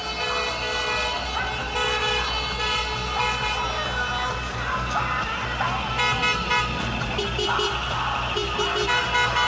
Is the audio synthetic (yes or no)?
no